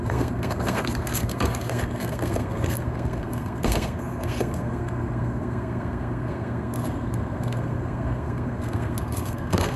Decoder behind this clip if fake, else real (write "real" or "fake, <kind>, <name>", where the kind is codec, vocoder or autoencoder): fake, codec, SNAC